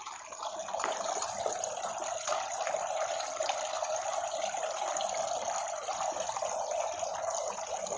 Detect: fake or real real